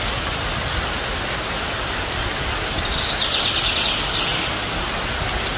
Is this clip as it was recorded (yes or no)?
yes